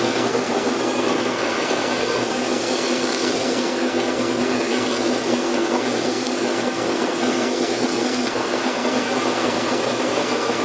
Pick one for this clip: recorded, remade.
remade